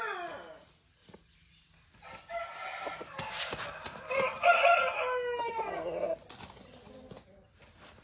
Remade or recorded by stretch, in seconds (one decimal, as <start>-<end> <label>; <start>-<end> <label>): 0.0-8.0 recorded